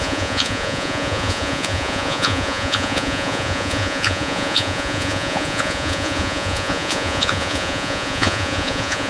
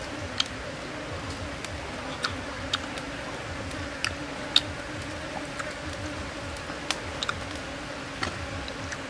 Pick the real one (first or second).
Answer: second